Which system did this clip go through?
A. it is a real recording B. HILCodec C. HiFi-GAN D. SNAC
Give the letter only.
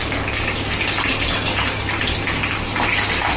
A